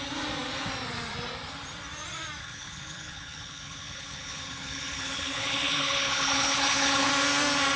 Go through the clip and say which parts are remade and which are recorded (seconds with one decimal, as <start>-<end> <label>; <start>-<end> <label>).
0.0-2.4 recorded; 2.4-7.1 remade; 7.1-7.8 recorded